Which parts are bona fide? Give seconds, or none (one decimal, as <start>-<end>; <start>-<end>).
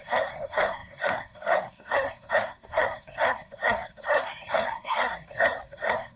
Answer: none